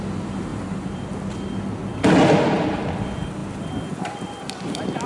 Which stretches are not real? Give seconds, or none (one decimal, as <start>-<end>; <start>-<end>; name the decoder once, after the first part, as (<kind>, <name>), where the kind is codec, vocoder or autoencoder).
0.5-1.1 (vocoder, BigVGAN v2)